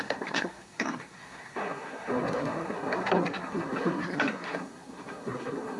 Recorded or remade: remade